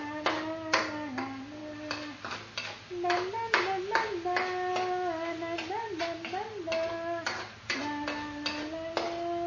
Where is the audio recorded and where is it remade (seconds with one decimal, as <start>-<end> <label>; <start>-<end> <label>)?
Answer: 0.0-9.5 recorded